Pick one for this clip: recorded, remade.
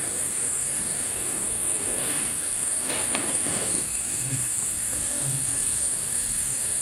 remade